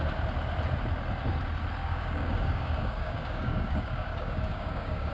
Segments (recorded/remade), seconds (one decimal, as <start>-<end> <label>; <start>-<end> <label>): 0.0-1.8 recorded; 1.8-5.1 remade